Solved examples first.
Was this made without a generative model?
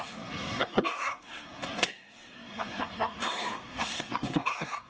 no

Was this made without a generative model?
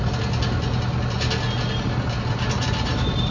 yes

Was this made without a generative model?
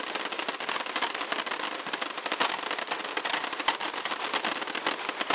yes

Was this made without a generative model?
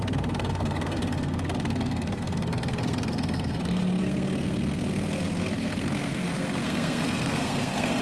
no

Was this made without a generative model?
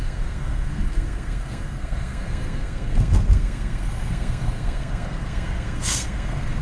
no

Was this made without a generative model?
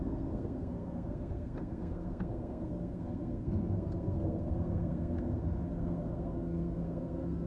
no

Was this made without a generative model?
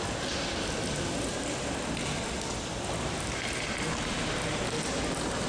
yes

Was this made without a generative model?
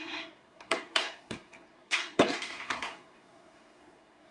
no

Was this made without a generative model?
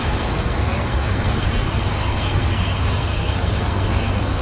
no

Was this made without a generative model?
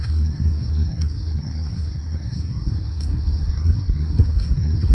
no